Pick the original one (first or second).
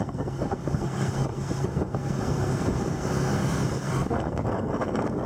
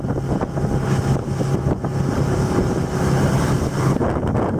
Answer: second